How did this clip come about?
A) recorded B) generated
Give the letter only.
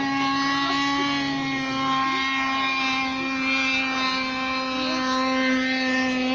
A